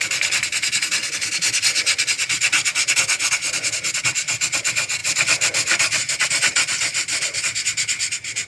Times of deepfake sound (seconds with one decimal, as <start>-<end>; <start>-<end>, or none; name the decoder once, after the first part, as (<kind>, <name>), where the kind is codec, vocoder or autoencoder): 5.0-7.4 (vocoder, BigVGAN v2)